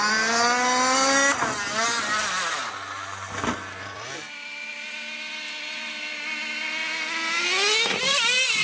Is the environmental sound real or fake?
real